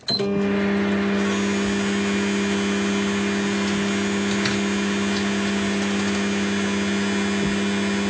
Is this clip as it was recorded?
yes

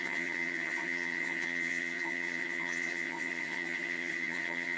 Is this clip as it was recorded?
no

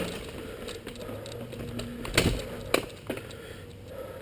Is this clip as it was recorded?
yes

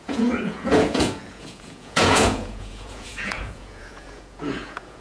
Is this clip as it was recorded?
no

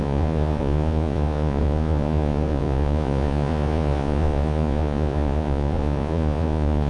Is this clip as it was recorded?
no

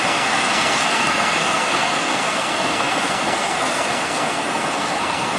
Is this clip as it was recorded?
no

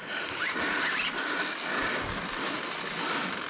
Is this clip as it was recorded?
yes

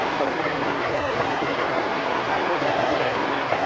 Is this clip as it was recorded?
no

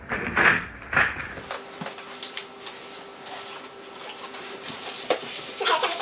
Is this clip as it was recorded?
yes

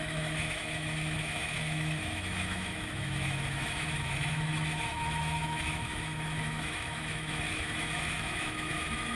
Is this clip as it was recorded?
no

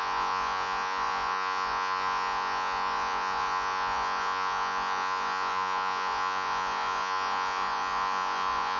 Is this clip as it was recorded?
no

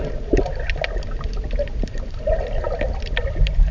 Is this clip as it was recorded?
yes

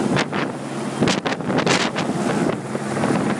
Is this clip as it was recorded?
yes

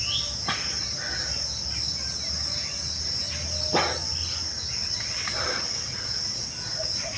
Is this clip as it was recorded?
yes